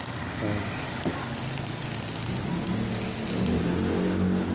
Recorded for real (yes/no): yes